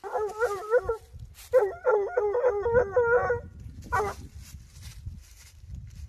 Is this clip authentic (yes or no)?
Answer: yes